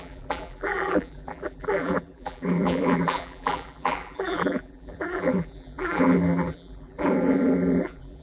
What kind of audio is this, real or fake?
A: fake